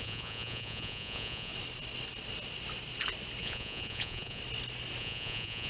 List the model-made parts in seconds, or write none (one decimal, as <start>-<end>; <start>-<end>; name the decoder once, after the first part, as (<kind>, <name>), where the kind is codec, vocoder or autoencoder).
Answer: 0.0-1.5 (vocoder, Vocos); 3.4-4.4; 5.0-5.7